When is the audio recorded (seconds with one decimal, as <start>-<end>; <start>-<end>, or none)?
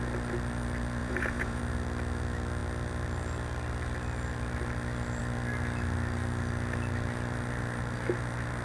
0.0-1.0; 1.6-8.6